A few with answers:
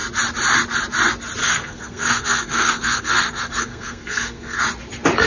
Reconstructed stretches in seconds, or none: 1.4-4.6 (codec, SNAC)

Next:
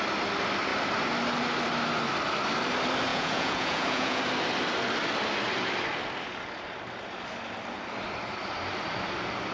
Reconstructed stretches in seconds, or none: 3.1-4.2 (vocoder, Vocos)

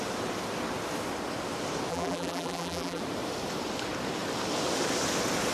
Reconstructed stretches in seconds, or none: 1.9-3.0 (vocoder, BigVGAN v2)

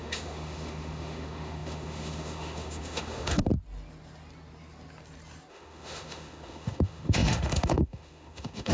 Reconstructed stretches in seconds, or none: 0.0-3.5 (autoencoder, DAC-VAE); 5.5-8.7

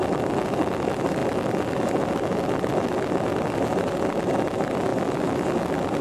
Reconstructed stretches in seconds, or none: none

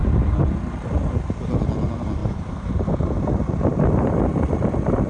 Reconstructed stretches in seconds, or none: 2.2-4.4 (vocoder, BigVGAN v2)

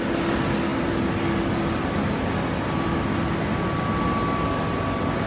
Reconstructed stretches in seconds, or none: none

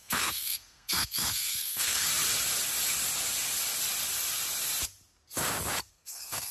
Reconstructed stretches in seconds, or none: 0.0-2.1 (codec, SNAC); 5.9-6.5